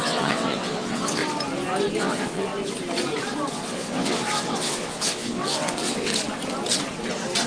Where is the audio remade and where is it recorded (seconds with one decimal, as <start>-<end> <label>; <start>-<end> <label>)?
0.0-1.2 remade; 1.2-2.0 recorded; 2.0-2.5 remade; 2.5-3.5 recorded; 3.5-6.1 remade; 6.1-7.5 recorded